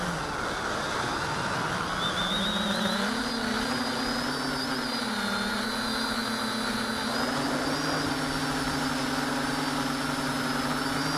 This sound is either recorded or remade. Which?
recorded